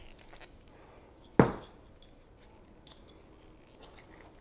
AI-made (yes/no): no